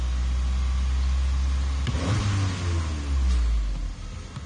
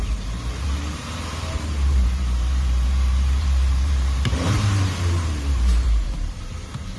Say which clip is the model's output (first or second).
second